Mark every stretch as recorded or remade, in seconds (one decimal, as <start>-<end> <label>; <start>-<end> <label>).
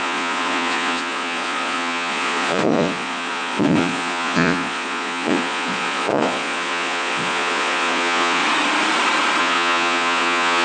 0.0-8.4 remade; 8.4-9.4 recorded; 9.4-10.6 remade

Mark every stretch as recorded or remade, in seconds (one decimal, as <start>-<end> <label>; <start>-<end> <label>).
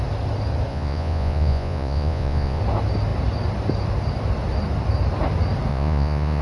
0.0-0.7 recorded; 0.7-2.6 remade; 2.6-5.7 recorded; 5.7-6.4 remade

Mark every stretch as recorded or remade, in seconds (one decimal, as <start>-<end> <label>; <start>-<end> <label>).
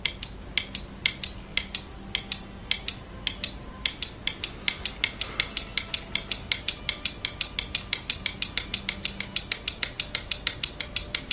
0.0-11.3 recorded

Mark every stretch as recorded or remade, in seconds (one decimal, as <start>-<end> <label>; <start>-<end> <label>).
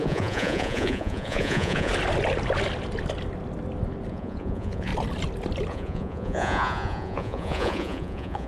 0.0-1.9 remade; 1.9-4.1 recorded; 4.1-4.9 remade; 4.9-5.7 recorded; 5.7-8.5 remade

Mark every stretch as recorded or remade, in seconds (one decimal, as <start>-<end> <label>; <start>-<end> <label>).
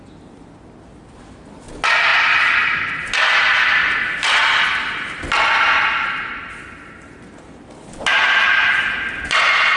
0.0-9.8 recorded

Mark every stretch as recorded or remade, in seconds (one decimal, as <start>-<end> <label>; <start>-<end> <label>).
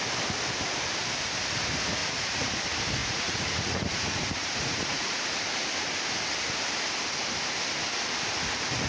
0.0-2.0 recorded; 2.0-2.6 remade; 2.6-3.0 recorded; 3.0-5.4 remade; 5.4-8.9 recorded